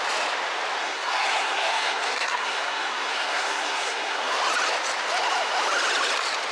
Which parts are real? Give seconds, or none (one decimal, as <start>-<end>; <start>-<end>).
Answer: 0.0-0.8; 4.4-6.5